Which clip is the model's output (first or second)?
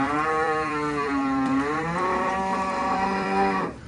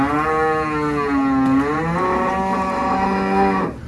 first